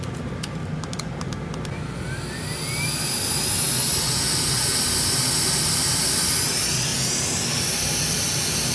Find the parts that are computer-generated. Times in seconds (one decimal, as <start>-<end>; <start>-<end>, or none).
none